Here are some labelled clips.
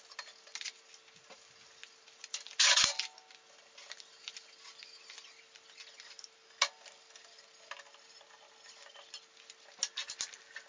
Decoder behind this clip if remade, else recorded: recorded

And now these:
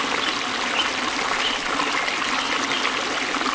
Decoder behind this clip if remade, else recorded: recorded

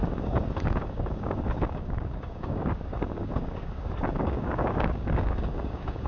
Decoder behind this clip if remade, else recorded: remade, codec, DAC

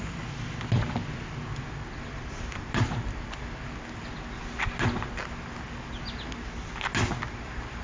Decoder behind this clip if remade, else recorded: recorded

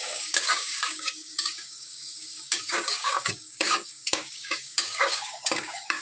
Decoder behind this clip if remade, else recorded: remade, codec, DAC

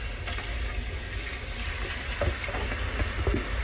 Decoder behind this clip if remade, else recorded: recorded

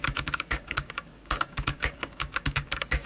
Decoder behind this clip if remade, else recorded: remade, codec, DAC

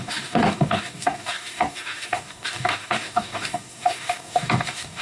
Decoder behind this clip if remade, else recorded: remade, codec, DAC